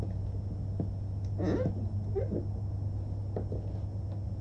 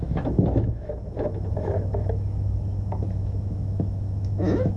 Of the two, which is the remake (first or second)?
second